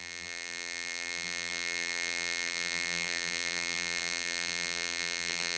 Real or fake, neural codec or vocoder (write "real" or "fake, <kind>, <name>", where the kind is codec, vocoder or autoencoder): fake, vocoder, BigVGAN v2